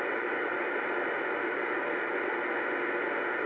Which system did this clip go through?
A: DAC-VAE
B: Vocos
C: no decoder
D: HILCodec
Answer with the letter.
C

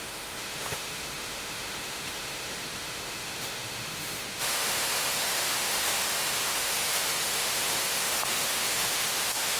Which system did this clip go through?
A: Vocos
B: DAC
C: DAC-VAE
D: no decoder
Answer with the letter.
C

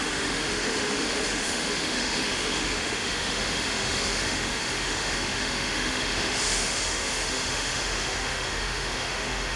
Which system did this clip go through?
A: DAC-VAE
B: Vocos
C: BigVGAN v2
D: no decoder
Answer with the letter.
A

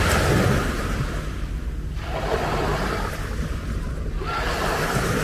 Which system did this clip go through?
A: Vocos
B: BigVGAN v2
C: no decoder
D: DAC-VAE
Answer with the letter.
C